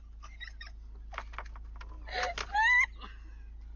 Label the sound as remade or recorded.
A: recorded